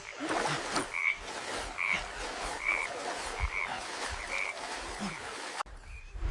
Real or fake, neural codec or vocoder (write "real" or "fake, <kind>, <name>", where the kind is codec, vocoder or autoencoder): real